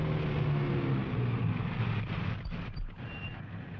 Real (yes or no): yes